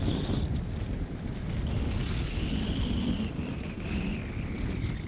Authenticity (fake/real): real